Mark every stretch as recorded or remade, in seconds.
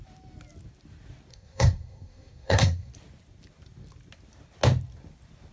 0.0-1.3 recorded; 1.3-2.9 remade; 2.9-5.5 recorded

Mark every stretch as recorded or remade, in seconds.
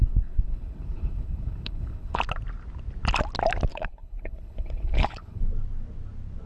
0.0-2.2 remade; 2.2-3.7 recorded; 3.7-5.4 remade; 5.4-6.5 recorded